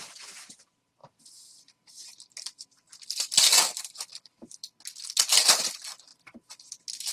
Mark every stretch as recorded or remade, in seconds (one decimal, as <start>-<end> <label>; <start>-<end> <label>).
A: 0.0-1.0 recorded; 1.0-3.5 remade; 3.5-7.1 recorded